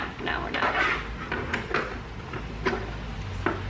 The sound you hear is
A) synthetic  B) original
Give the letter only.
B